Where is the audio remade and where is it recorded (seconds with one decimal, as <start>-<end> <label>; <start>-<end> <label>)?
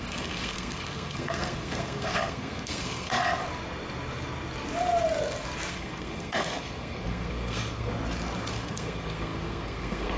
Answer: 0.0-3.4 remade; 3.4-5.7 recorded; 5.7-7.9 remade; 7.9-8.5 recorded; 8.5-10.2 remade